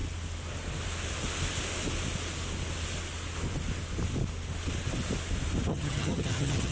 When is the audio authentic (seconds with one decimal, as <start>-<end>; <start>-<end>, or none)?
0.0-5.7